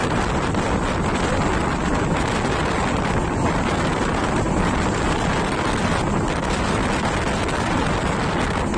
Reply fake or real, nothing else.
real